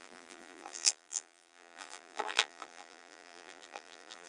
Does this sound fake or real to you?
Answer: fake